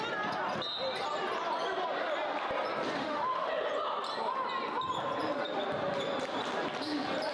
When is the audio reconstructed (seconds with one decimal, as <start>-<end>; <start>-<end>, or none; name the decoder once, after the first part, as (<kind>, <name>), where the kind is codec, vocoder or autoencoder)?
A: 3.0-3.5 (autoencoder, DAC-VAE)